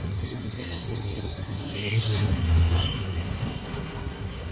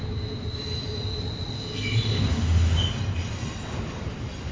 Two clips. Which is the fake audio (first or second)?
first